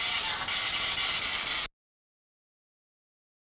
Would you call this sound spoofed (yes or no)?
no